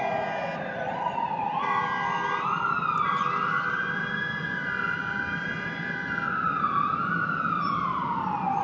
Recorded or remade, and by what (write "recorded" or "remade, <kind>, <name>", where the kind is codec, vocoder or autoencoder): recorded